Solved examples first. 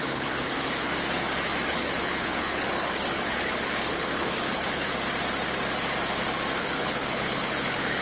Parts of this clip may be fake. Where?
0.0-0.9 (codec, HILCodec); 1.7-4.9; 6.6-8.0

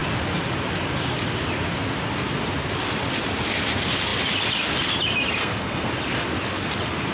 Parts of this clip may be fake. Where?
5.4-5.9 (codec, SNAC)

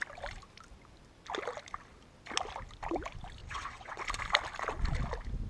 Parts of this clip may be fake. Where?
3.4-4.0 (vocoder, WaveNeXt)

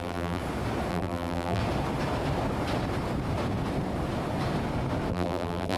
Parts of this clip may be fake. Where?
0.0-0.4 (vocoder, BigVGAN v2); 0.9-1.6; 5.1-5.8